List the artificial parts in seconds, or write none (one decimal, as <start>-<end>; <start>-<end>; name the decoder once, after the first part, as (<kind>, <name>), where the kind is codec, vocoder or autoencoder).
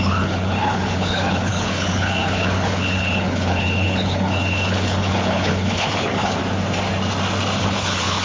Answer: 0.0-6.4 (codec, HILCodec); 7.6-8.2